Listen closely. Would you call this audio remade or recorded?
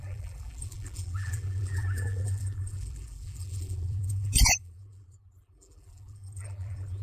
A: remade